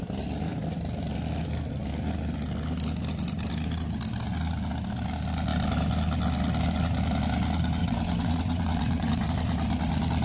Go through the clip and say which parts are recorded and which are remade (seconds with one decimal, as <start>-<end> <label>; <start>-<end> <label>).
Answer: 0.0-7.8 recorded; 7.8-9.3 remade; 9.3-10.2 recorded